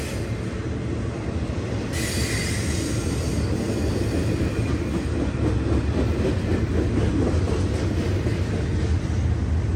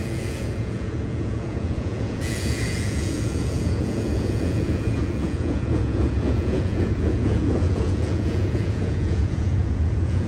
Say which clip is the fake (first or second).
second